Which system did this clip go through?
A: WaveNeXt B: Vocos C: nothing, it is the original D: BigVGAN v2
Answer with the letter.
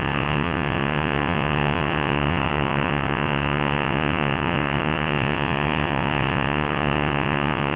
A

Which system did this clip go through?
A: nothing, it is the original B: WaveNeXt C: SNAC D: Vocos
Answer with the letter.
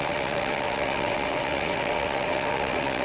B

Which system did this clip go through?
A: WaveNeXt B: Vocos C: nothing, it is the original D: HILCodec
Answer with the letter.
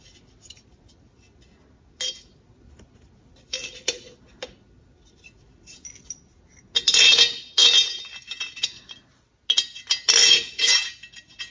C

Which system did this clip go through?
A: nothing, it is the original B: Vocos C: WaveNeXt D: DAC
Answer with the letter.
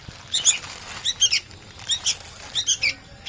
A